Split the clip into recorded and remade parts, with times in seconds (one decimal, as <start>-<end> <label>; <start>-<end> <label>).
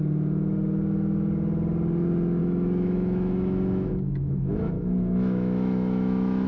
0.0-2.4 recorded; 2.4-6.5 remade